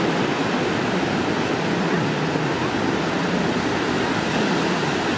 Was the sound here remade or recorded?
recorded